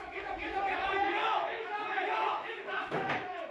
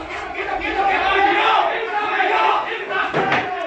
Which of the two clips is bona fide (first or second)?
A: second